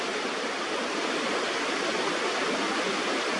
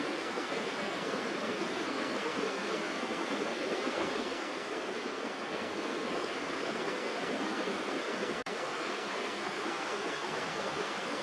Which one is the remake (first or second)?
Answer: second